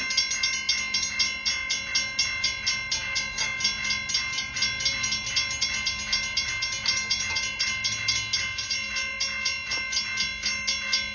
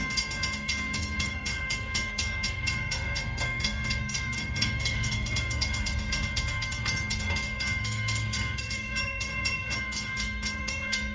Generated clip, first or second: second